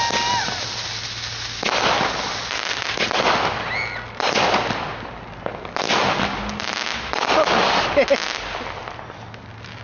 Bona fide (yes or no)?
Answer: yes